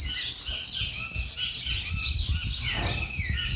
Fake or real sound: real